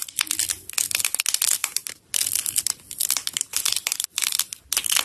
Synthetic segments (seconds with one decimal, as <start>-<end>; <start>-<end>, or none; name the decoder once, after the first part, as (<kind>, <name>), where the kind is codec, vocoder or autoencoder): 1.6-4.6 (vocoder, BigVGAN v2)